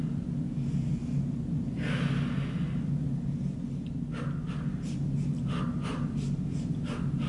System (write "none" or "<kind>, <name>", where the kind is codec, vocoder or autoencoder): none